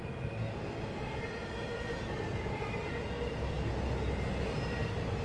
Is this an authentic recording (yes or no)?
yes